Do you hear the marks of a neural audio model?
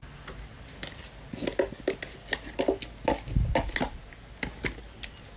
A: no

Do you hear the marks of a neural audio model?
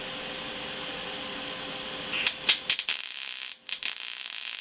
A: no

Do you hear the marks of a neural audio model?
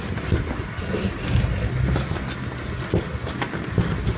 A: no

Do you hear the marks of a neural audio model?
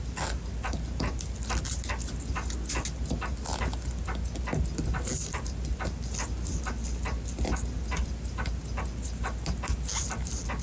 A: no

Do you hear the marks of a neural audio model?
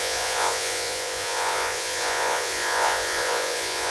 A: yes